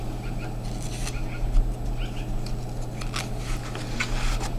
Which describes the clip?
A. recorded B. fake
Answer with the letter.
A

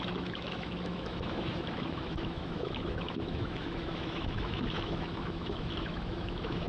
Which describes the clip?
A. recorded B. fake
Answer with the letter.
B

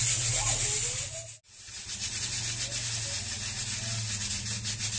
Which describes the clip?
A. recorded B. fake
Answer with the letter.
A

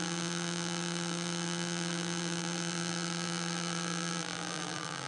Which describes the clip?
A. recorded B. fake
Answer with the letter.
B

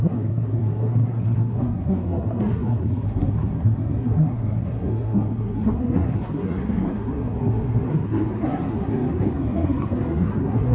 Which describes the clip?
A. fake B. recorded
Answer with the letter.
A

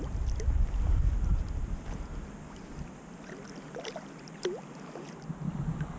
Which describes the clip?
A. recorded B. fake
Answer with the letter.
A